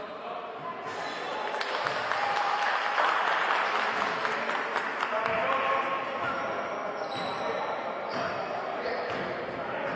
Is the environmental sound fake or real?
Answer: real